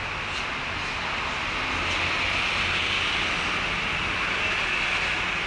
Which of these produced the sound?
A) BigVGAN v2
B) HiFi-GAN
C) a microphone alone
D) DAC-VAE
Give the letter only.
C